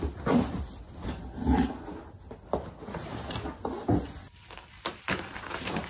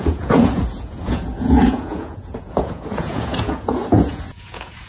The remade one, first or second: second